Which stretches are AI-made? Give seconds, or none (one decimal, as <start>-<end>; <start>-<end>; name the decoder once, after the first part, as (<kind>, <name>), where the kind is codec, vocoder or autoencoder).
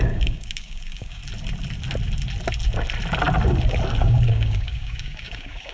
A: 0.0-1.2 (codec, DAC); 4.0-5.7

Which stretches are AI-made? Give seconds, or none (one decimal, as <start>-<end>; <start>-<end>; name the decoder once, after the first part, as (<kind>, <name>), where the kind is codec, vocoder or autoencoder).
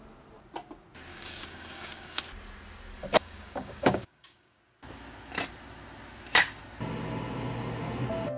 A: 1.1-2.2 (codec, DAC); 3.0-4.6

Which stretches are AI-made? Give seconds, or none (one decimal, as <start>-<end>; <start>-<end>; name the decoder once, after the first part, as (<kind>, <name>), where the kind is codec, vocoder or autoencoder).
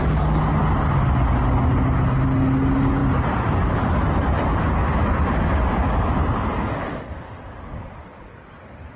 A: none